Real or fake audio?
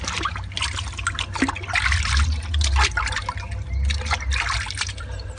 real